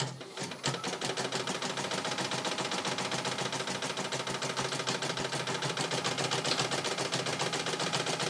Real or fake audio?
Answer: real